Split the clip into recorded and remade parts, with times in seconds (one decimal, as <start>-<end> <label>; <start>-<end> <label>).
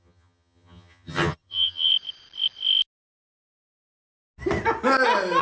0.0-1.9 remade; 1.9-5.4 recorded